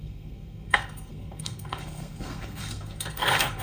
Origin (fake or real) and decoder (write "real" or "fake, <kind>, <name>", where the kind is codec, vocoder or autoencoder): fake, codec, SNAC